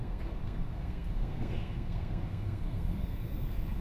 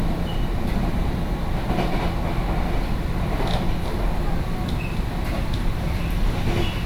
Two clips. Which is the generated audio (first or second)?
first